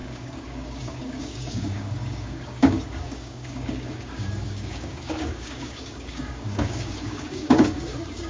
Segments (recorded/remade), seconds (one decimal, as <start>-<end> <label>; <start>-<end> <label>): 0.0-8.3 remade